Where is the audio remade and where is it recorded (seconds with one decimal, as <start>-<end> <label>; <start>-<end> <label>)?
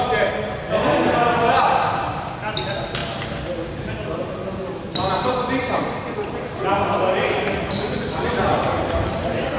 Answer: 0.0-8.5 recorded; 8.5-9.6 remade